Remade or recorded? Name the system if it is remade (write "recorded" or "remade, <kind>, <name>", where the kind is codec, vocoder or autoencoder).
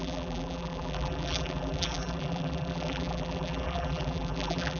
remade, vocoder, BigVGAN v2